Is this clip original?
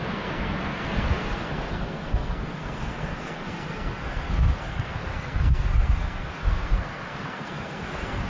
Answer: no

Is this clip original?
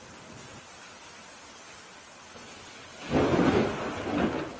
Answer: yes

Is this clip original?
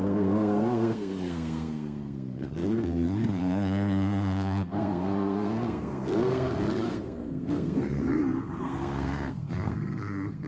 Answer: no